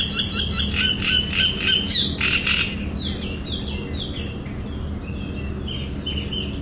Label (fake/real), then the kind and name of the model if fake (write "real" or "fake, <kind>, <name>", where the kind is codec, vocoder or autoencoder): real